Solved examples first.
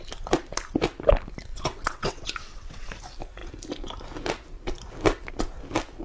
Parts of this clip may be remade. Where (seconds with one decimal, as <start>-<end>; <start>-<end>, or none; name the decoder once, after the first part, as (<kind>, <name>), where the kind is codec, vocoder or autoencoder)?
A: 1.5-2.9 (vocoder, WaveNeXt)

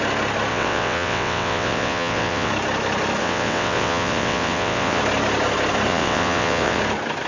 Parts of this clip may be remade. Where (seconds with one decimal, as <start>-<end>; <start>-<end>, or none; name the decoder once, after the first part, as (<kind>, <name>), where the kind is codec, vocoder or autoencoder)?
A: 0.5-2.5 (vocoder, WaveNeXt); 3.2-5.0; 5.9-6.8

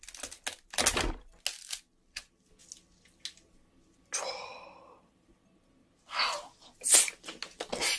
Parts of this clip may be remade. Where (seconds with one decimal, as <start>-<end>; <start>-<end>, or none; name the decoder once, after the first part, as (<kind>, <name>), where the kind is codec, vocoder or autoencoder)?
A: none

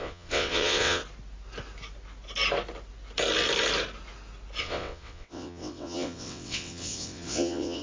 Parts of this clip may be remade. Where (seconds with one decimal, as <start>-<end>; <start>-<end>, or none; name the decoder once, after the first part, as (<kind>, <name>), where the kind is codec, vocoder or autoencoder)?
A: 0.0-1.0 (vocoder, WaveNeXt); 4.6-7.8

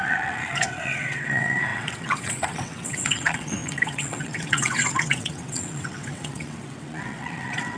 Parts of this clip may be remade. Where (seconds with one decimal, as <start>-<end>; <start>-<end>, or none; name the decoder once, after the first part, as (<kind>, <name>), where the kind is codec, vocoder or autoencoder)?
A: 0.0-7.8 (vocoder, WaveNeXt)